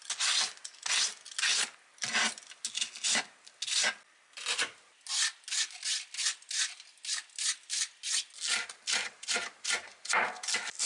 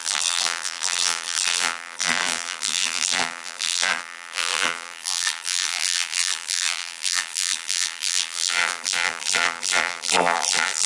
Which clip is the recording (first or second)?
first